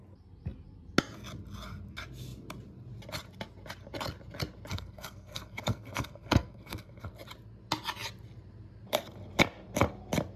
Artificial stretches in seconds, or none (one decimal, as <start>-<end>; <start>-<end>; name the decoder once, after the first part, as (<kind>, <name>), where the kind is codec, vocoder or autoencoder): 4.7-7.1 (codec, SNAC)